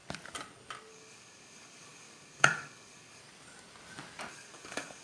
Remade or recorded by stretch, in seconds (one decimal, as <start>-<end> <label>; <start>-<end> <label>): 0.0-0.9 recorded; 0.9-3.2 remade; 3.2-4.3 recorded; 4.3-5.0 remade